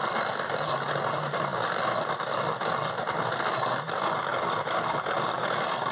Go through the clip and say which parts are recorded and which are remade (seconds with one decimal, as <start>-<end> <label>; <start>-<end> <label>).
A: 0.0-5.9 recorded